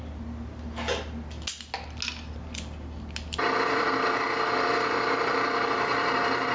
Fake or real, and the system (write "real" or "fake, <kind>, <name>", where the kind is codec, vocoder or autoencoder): real